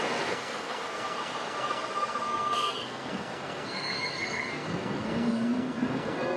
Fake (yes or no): yes